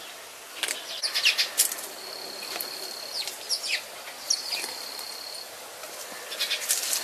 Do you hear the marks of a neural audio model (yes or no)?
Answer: yes